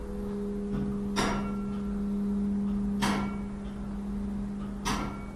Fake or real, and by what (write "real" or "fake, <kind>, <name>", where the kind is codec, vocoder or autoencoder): real